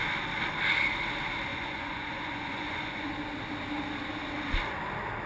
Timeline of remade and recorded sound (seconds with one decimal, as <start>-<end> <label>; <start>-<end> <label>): 0.0-1.5 recorded; 1.5-3.1 remade; 3.1-5.3 recorded